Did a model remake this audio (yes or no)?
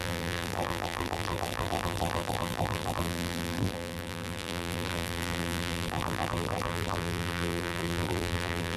yes